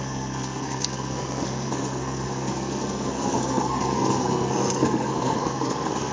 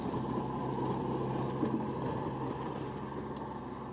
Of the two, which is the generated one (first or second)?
first